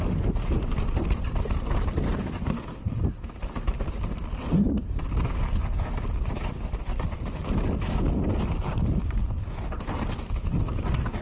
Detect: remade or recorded recorded